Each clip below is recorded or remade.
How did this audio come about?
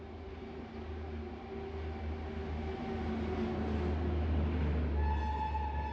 recorded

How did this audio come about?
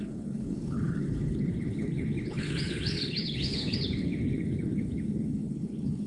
remade